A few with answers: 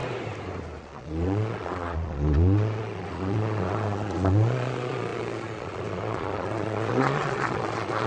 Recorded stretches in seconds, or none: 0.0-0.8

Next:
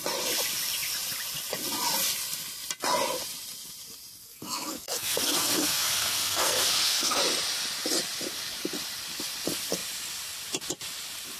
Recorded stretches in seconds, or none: 0.0-4.2; 7.2-11.4

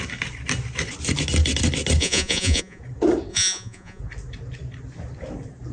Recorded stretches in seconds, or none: 0.0-2.0; 2.8-3.3; 4.0-5.7